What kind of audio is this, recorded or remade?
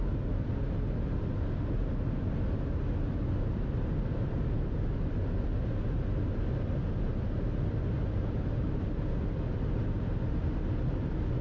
recorded